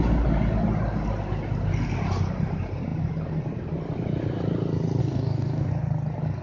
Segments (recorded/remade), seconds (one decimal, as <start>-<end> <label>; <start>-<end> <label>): 0.0-5.0 recorded; 5.0-5.7 remade; 5.7-6.4 recorded